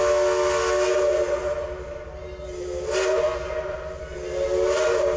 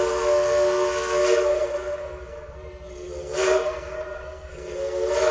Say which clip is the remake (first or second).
second